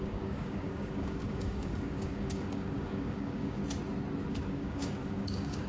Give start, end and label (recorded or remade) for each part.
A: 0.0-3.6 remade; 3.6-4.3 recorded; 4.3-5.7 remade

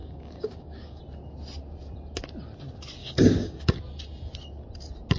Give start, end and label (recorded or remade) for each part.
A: 0.0-1.0 remade; 1.0-3.0 recorded; 3.0-3.8 remade; 3.8-5.2 recorded

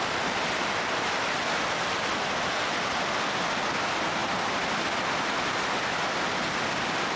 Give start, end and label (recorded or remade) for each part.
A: 0.0-7.2 recorded

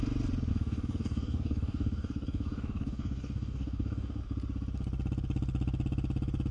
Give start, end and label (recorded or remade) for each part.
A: 0.0-0.5 recorded; 0.5-4.2 remade; 4.2-6.5 recorded

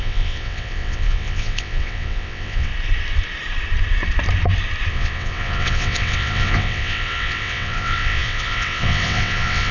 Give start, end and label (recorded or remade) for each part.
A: 0.0-2.7 remade; 2.7-4.9 recorded; 4.9-9.7 remade

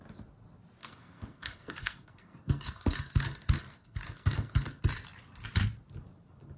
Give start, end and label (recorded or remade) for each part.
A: 0.0-0.8 recorded; 0.8-4.8 remade; 4.8-6.6 recorded